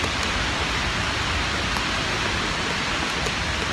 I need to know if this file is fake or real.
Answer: real